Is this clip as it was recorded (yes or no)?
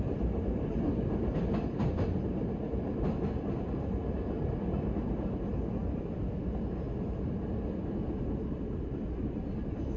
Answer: yes